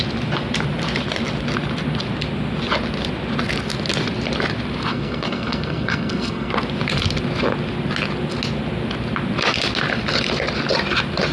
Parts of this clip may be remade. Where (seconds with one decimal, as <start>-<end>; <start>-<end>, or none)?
4.9-6.5